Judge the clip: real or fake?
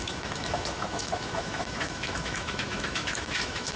fake